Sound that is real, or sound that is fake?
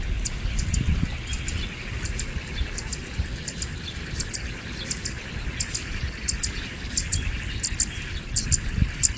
real